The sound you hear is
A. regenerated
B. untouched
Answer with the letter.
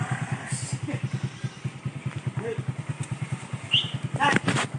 B